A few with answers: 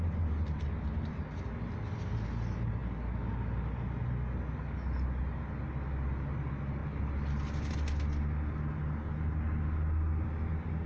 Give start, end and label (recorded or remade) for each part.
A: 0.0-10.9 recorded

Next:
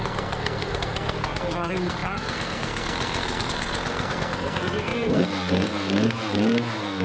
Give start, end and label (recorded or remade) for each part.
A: 0.0-7.0 remade

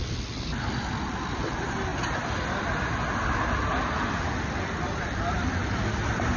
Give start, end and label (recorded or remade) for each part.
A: 0.0-6.4 recorded